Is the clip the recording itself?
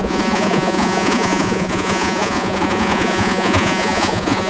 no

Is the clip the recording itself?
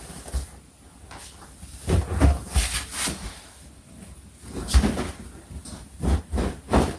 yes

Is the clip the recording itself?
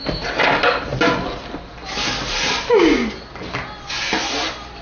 yes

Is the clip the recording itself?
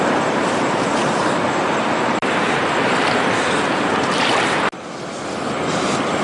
yes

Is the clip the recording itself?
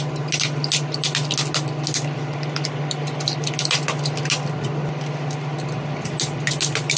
yes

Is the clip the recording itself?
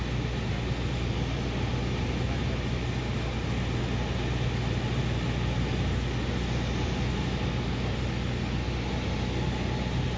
yes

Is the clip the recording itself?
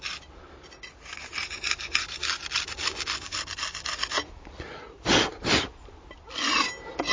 yes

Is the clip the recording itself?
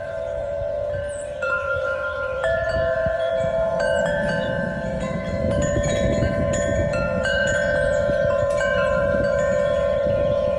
no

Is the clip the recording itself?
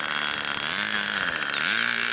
yes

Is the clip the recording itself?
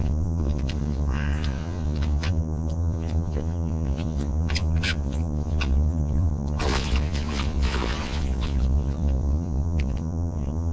no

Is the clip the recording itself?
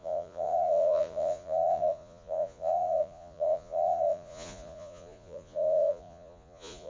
no